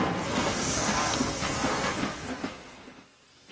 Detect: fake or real fake